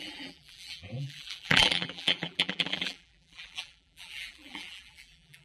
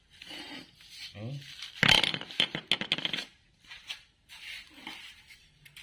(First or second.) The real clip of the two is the second